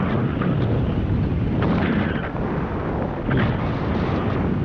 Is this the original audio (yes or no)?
yes